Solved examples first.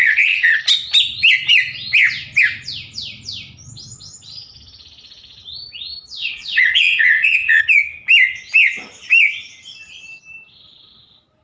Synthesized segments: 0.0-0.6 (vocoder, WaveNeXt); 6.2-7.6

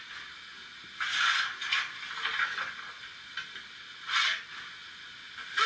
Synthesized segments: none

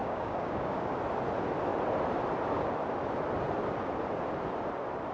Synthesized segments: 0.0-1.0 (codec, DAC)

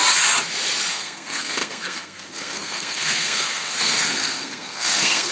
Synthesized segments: 0.9-5.3 (codec, SNAC)